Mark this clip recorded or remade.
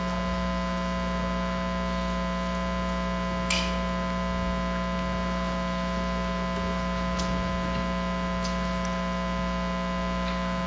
recorded